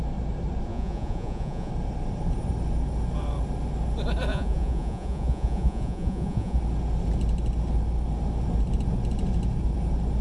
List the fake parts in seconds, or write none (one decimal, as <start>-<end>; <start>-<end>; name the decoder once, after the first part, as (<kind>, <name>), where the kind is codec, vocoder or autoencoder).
0.7-1.7 (vocoder, Vocos); 4.3-6.6